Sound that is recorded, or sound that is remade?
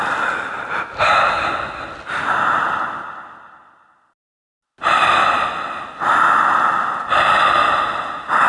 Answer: recorded